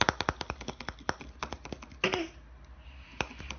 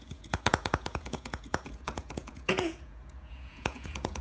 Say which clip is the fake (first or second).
second